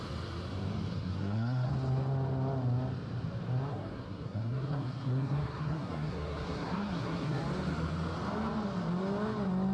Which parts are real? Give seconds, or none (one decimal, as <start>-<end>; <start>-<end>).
0.0-0.9; 1.7-3.7; 7.4-9.7